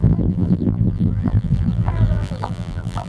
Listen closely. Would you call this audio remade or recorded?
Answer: remade